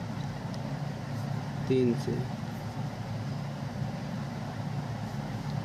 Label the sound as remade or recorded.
recorded